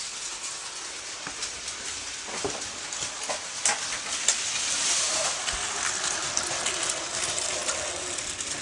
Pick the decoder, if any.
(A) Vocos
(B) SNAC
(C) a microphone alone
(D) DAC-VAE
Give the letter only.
C